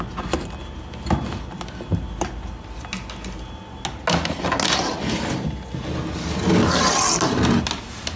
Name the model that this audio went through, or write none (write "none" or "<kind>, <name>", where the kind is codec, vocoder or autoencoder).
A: none